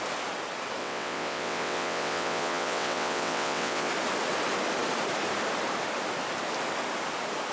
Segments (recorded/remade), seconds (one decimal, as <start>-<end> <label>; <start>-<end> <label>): 0.0-0.8 recorded; 0.8-3.9 remade; 3.9-7.5 recorded